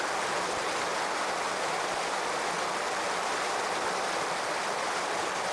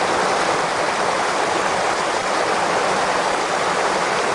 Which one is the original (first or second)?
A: first